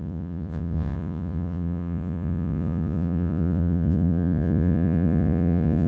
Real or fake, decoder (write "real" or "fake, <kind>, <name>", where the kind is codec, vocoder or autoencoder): fake, vocoder, Vocos